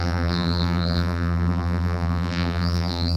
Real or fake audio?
fake